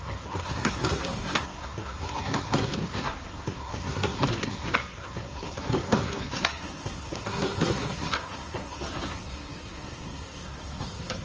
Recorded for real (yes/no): no